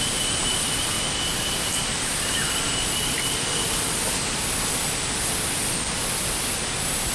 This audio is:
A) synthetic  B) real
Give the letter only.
B